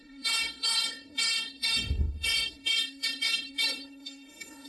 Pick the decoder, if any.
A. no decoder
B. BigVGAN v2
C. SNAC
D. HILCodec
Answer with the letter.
C